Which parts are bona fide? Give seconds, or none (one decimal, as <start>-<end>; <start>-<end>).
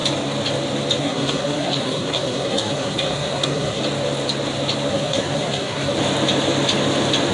0.0-1.0; 3.8-4.9; 5.9-7.3